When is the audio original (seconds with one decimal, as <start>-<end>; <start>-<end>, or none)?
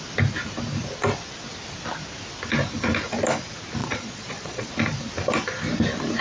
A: 0.0-3.8; 4.7-6.2